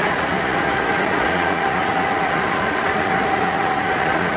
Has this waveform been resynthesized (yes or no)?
yes